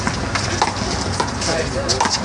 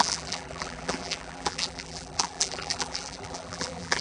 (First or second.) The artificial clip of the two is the second